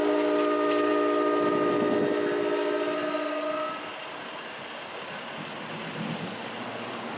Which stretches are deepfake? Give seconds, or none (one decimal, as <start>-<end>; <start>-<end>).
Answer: none

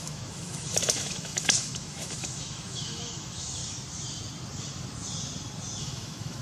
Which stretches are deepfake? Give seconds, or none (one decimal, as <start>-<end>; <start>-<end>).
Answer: 0.0-3.6; 5.8-6.4

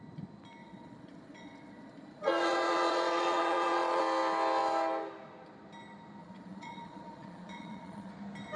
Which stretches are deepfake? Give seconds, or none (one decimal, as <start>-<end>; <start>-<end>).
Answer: 0.6-4.0; 6.2-8.1

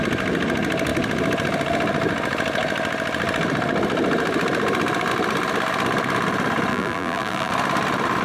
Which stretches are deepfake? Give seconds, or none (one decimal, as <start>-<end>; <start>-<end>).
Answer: 6.7-7.5